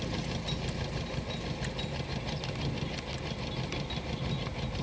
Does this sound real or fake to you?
real